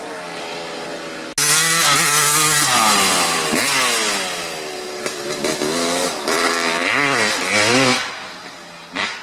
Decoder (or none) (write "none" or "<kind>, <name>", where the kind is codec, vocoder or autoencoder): none